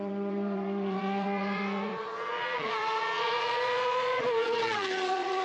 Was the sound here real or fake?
fake